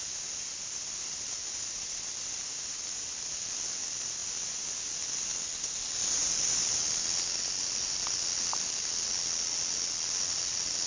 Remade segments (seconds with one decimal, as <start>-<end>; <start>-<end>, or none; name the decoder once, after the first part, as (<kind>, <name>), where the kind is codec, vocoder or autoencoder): none